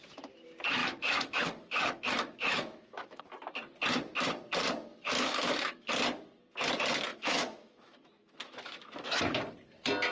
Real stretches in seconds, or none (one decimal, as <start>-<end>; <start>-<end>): 0.0-0.8; 3.2-4.9; 5.9-7.1; 9.2-10.1